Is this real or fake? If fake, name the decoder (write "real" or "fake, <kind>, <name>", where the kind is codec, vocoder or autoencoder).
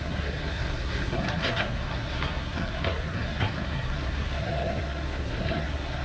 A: fake, codec, SNAC